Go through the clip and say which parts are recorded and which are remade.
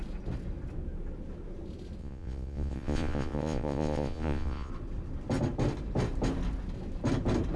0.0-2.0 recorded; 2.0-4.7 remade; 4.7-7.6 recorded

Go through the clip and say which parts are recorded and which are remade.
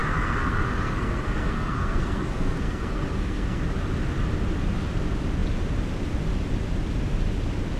0.0-3.6 remade; 3.6-7.8 recorded